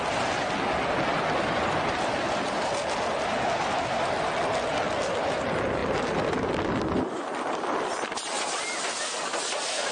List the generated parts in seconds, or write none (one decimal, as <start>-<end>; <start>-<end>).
none